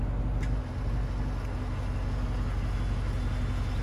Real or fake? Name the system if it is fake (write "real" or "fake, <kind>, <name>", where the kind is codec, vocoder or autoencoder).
real